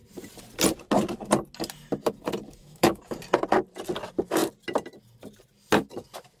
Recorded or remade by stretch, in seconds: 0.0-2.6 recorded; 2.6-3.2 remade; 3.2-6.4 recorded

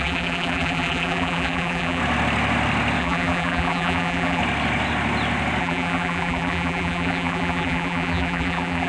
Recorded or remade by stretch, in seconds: 0.0-2.0 remade; 2.0-3.0 recorded; 3.0-4.4 remade; 4.4-5.6 recorded; 5.6-8.9 remade

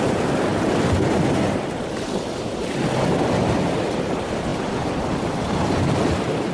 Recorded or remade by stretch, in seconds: 0.0-6.5 recorded

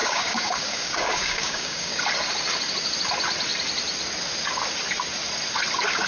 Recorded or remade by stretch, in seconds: 0.0-2.0 remade; 2.0-6.1 recorded

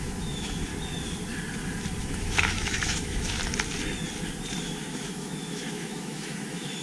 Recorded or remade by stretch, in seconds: 0.0-0.7 remade; 0.7-2.0 recorded; 2.0-3.4 remade; 3.4-4.6 recorded; 4.6-6.8 remade